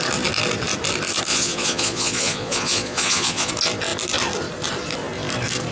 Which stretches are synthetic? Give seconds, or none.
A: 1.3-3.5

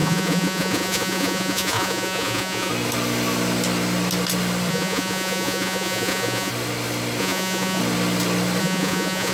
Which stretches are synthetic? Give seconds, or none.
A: 0.0-2.7; 4.7-6.5; 7.2-7.8; 8.6-9.3

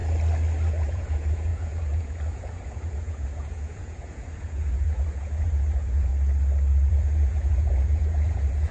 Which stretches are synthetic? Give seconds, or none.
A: 0.7-6.1; 6.9-8.7

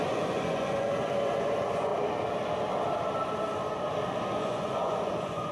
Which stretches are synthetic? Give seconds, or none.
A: 0.0-1.9; 4.3-5.5

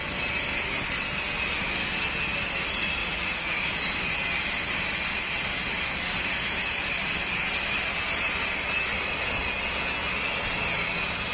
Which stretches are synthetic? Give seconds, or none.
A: 3.0-3.6